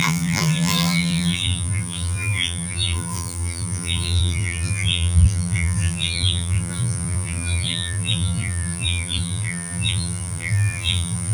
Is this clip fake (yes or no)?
yes